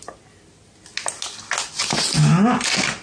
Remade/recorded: recorded